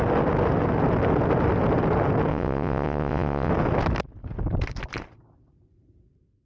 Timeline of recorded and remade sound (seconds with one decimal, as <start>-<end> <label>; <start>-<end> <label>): 0.0-2.3 recorded; 2.3-3.5 remade; 3.5-6.5 recorded

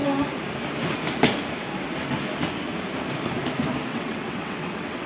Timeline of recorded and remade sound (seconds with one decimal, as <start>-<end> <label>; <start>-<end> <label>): 0.0-3.9 recorded; 3.9-5.1 remade